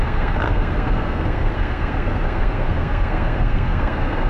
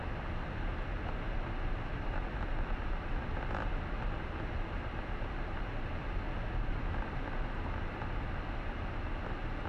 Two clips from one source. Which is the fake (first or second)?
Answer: first